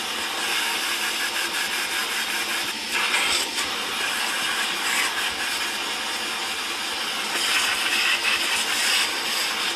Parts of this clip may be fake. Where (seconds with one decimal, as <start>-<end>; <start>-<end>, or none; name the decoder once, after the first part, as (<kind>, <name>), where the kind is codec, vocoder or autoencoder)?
none